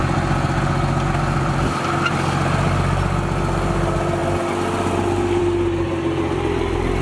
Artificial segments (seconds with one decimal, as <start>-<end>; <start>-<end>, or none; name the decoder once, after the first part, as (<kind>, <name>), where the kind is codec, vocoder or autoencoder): none